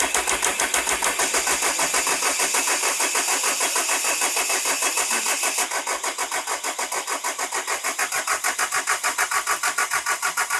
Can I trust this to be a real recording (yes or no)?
yes